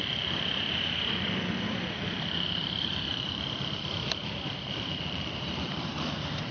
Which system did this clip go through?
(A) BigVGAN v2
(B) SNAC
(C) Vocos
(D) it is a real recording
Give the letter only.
A